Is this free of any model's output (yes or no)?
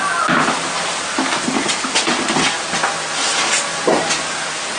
yes